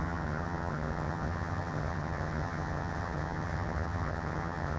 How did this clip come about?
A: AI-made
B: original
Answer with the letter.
A